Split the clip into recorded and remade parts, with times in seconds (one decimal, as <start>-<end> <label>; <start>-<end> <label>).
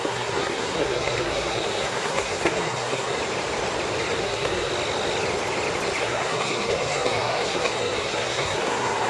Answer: 0.0-3.2 remade; 3.2-4.2 recorded; 4.2-4.7 remade; 4.7-6.0 recorded; 6.0-9.1 remade